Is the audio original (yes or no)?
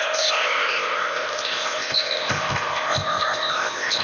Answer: no